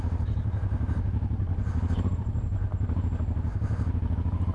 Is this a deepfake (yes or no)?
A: no